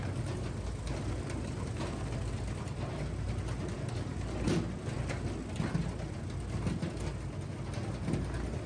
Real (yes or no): yes